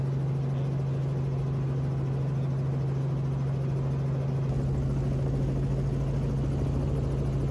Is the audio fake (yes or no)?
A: no